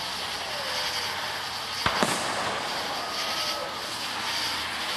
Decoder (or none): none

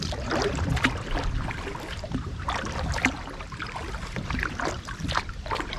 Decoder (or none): none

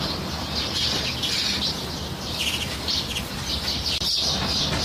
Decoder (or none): none